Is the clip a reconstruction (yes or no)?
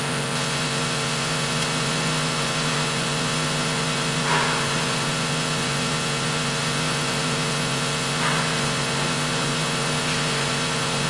yes